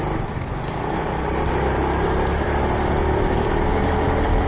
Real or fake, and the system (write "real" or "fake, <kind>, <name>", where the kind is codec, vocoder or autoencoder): real